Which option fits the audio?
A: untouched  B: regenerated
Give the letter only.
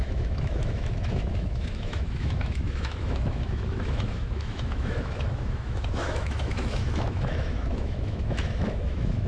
B